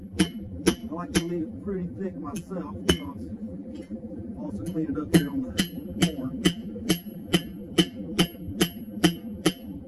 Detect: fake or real fake